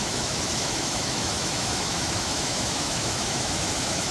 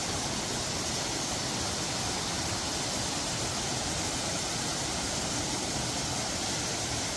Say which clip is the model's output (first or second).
first